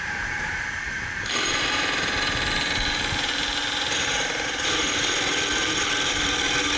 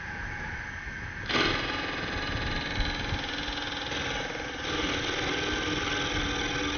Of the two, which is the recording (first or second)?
second